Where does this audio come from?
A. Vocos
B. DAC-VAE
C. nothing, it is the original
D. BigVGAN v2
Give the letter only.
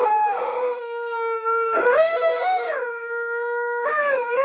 B